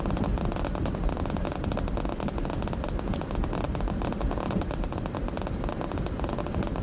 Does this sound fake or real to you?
real